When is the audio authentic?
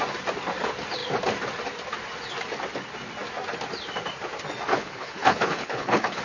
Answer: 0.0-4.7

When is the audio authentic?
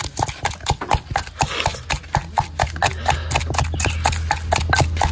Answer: 0.0-5.1